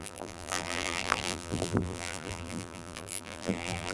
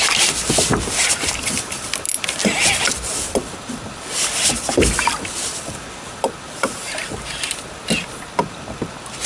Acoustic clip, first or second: second